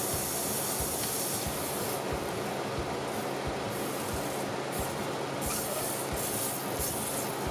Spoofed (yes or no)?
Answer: no